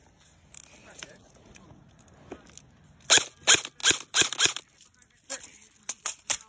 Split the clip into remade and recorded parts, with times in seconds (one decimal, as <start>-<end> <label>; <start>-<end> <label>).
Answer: 0.0-0.8 recorded; 0.8-2.0 remade; 2.0-6.5 recorded